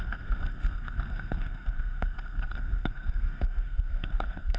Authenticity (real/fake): fake